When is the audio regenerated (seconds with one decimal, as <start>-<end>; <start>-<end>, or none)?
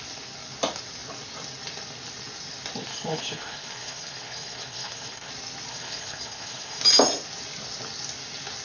2.9-5.3; 5.7-6.8